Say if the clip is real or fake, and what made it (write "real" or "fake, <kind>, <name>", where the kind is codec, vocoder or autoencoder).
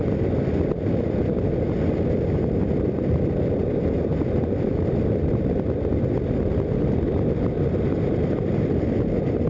real